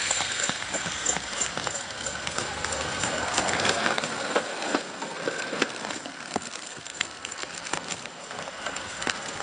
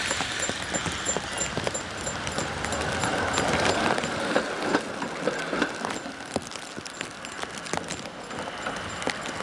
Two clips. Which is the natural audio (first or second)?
second